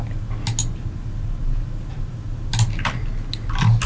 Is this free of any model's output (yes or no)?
yes